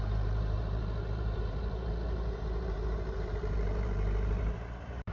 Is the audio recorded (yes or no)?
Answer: no